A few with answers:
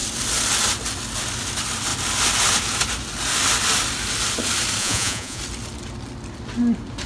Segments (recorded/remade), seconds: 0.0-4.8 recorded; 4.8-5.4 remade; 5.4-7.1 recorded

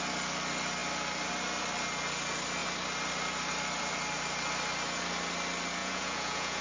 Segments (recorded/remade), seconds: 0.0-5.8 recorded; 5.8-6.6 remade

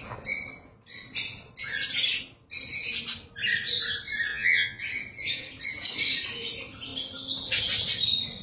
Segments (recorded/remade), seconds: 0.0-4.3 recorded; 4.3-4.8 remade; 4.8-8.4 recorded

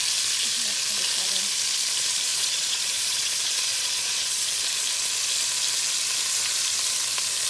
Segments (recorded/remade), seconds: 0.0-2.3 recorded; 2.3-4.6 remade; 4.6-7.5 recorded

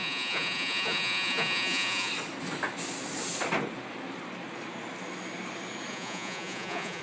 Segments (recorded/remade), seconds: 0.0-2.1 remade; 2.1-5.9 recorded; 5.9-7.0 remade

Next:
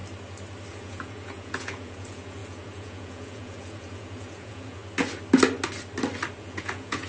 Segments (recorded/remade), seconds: 0.0-0.7 recorded; 0.7-4.8 remade; 4.8-6.4 recorded; 6.4-7.1 remade